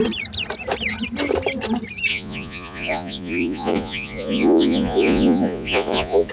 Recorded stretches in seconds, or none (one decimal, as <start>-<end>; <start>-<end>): 0.0-2.1